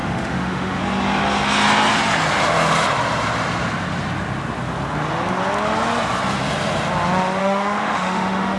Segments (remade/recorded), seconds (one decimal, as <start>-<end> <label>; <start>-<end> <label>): 0.0-0.8 remade; 0.8-7.4 recorded; 7.4-8.6 remade